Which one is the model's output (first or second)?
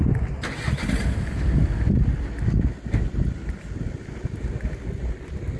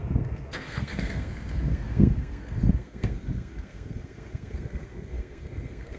second